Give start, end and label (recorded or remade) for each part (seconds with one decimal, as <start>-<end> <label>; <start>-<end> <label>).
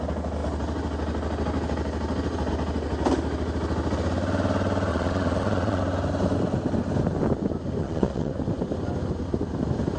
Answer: 0.0-4.9 recorded; 4.9-5.8 remade; 5.8-7.8 recorded; 7.8-8.3 remade; 8.3-10.0 recorded